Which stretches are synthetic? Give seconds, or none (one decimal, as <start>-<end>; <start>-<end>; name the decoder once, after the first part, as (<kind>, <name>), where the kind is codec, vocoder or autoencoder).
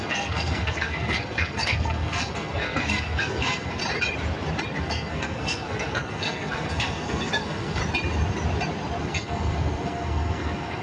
0.0-3.8 (codec, SNAC); 4.8-7.8; 9.0-10.8